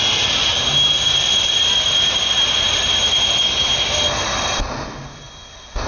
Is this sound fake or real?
real